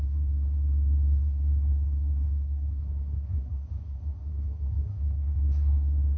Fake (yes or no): yes